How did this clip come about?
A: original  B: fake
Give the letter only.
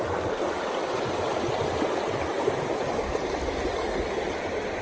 A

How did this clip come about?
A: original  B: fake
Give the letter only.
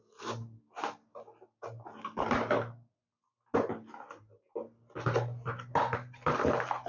A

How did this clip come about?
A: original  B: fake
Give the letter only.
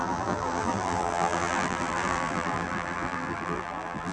B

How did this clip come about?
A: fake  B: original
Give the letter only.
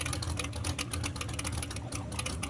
B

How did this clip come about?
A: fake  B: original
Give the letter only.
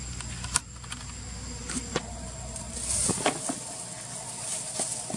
B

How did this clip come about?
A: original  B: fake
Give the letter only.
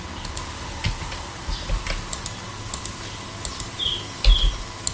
A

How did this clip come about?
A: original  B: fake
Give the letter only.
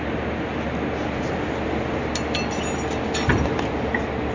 A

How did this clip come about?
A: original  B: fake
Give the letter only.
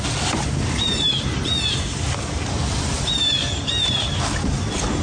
A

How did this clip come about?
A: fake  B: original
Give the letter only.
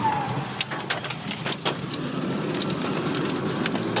B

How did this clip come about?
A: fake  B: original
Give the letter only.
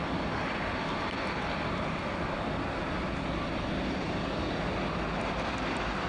B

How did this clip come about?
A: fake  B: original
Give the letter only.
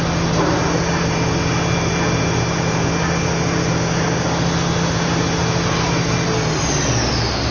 B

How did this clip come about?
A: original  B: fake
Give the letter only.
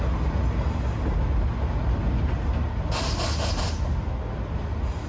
A